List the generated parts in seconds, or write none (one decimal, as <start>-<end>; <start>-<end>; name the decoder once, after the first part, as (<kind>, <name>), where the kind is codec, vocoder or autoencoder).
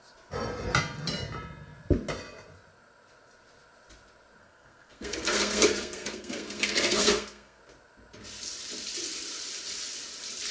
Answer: 4.4-7.6 (codec, SNAC)